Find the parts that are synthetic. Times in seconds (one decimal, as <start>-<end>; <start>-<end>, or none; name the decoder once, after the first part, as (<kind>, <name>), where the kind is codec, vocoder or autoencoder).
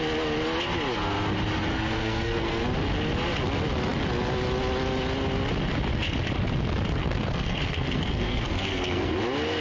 1.7-2.6 (codec, SNAC); 7.0-9.1